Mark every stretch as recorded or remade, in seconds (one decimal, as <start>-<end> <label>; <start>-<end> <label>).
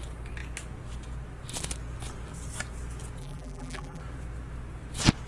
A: 0.0-3.2 recorded; 3.2-4.0 remade; 4.0-5.3 recorded